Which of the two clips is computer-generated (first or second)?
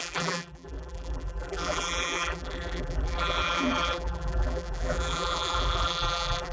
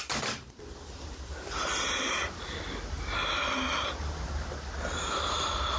first